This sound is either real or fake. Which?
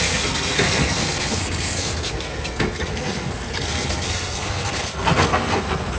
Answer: fake